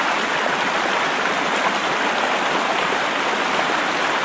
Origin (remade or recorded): recorded